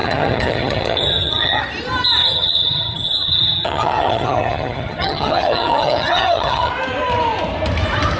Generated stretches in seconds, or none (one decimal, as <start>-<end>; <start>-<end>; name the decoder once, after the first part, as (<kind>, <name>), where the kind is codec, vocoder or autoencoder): 0.0-1.6 (vocoder, HiFi-GAN); 2.2-6.7